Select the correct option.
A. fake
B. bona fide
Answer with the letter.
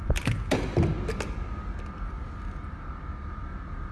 B